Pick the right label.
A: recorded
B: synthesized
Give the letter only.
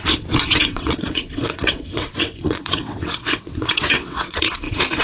B